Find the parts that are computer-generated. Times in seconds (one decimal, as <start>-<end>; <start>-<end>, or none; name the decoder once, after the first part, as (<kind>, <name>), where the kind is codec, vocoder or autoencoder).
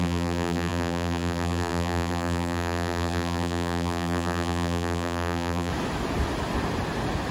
0.0-5.7 (vocoder, BigVGAN v2)